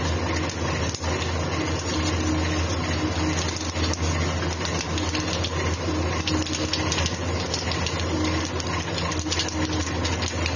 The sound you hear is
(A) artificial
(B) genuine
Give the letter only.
B